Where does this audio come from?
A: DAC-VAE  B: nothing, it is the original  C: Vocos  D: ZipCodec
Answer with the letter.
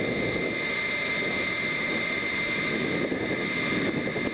B